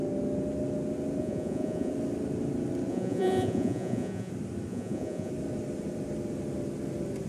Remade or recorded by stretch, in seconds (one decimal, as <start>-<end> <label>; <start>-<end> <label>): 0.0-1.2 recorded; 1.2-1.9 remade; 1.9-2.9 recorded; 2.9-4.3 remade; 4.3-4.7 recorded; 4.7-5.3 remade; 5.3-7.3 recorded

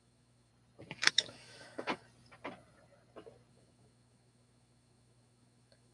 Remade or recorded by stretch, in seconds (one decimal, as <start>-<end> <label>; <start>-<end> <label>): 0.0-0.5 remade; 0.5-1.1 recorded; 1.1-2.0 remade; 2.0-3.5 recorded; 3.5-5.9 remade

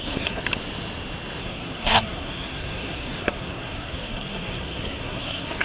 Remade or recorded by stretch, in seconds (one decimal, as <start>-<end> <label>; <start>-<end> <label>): 0.0-0.4 remade; 0.4-1.4 recorded; 1.4-5.6 remade

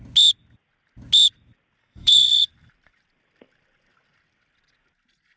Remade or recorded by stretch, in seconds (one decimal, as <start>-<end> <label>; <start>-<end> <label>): 0.0-1.8 recorded; 1.8-2.5 remade; 2.5-5.4 recorded

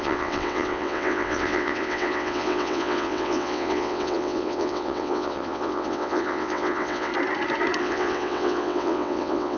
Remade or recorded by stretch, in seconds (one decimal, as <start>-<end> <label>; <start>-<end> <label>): 0.0-7.1 remade; 7.1-7.8 recorded; 7.8-9.6 remade

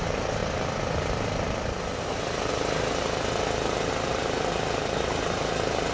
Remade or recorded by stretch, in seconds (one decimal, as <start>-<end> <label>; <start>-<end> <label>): 0.0-5.9 remade

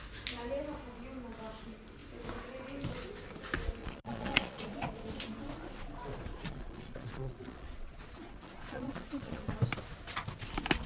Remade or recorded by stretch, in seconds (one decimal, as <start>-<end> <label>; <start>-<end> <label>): 0.0-3.8 recorded; 3.8-4.6 remade; 4.6-6.3 recorded; 6.3-9.5 remade; 9.5-10.9 recorded